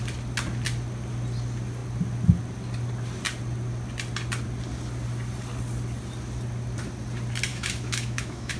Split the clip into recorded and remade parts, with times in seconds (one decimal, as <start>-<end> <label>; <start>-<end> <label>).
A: 0.0-7.5 recorded; 7.5-8.6 remade